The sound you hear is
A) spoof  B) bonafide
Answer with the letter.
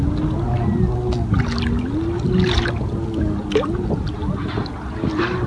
B